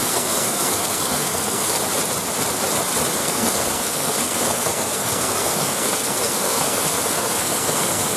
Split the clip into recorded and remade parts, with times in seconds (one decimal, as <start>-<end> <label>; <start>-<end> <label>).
0.0-1.8 remade; 1.8-3.2 recorded; 3.2-8.2 remade